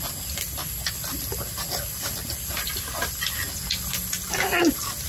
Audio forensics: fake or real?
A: real